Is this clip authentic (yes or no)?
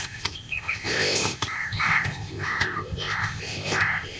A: no